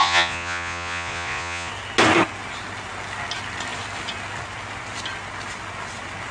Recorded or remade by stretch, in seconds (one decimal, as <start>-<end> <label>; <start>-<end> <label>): 0.0-1.7 remade; 1.7-6.3 recorded